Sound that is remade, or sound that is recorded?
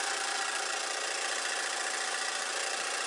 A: recorded